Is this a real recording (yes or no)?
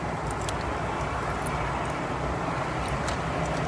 yes